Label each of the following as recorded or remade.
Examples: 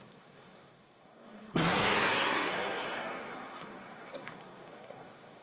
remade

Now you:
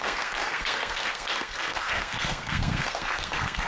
remade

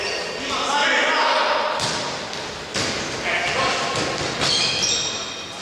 recorded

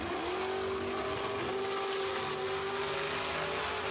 recorded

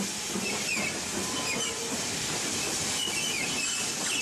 recorded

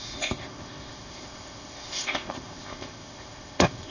remade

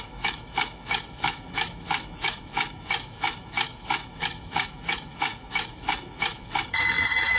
remade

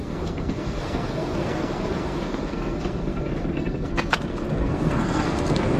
remade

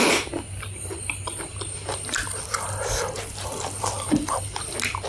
remade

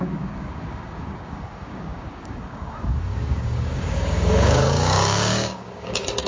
remade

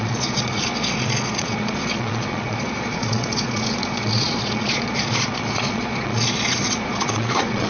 remade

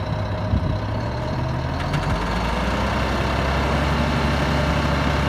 recorded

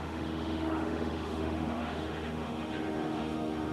remade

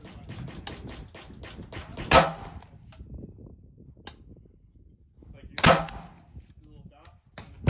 recorded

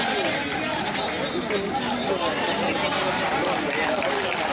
recorded